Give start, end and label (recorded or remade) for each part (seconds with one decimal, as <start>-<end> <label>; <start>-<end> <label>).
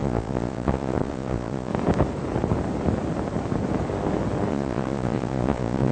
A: 0.0-1.7 remade; 1.7-4.5 recorded; 4.5-5.9 remade